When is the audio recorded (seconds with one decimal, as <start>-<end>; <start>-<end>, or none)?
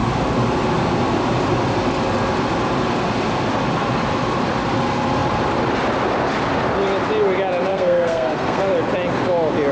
0.0-7.7; 8.6-9.7